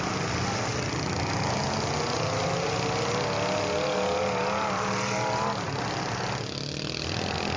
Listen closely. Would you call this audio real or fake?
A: real